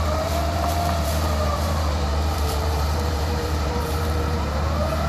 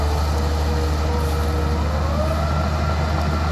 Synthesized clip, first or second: first